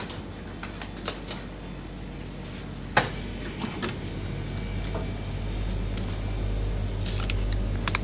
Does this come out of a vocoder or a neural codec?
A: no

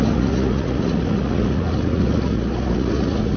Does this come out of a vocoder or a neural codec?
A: yes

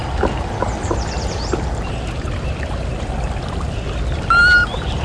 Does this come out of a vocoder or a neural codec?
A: no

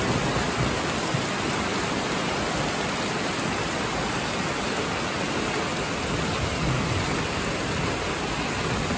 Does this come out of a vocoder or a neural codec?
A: no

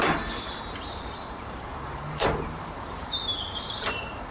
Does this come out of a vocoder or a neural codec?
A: yes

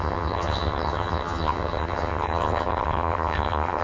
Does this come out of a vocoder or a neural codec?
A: yes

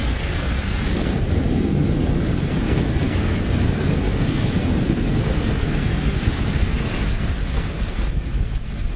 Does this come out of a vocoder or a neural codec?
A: yes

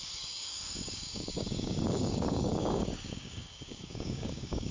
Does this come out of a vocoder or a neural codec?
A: yes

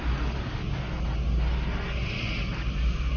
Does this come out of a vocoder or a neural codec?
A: no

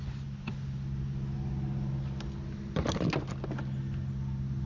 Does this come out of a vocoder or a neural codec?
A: no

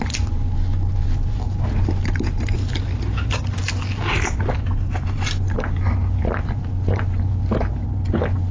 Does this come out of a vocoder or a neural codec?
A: no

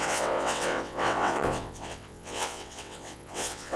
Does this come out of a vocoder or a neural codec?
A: yes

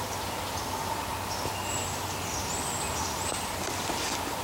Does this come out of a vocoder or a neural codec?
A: no